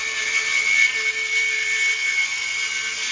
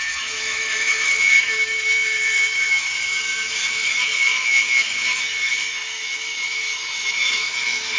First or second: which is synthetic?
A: second